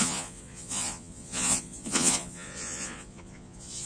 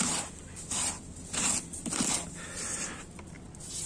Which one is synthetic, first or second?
first